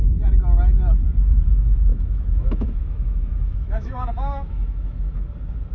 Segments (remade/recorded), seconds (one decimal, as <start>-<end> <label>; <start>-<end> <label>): 0.0-1.9 recorded; 1.9-5.3 remade; 5.3-5.7 recorded